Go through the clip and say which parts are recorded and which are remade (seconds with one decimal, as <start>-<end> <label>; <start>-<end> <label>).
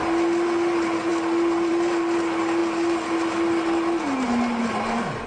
0.0-5.3 recorded